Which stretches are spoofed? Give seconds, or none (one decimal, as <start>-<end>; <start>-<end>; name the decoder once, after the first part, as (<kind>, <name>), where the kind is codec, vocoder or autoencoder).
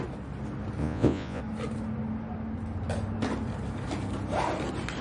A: 0.8-1.4 (vocoder, Vocos)